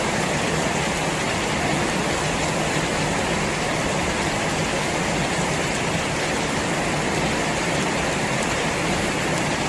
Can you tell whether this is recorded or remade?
recorded